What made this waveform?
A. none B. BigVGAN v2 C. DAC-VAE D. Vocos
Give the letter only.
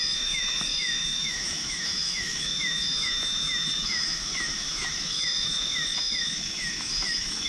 C